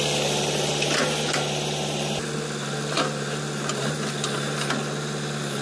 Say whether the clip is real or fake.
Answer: real